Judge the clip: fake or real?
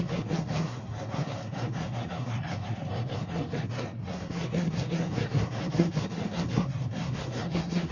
fake